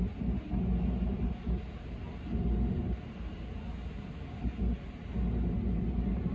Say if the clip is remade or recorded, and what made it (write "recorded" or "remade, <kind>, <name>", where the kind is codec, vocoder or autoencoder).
recorded